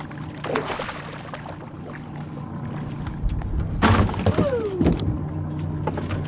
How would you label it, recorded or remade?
recorded